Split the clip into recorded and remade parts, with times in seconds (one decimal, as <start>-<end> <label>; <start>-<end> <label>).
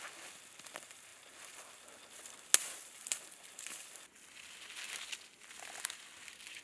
0.0-6.6 recorded